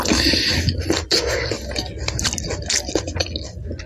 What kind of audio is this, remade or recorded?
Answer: recorded